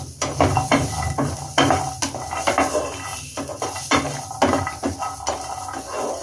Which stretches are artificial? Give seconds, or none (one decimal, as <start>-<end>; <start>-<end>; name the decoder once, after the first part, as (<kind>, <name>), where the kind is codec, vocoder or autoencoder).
none